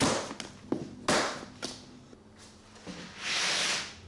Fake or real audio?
real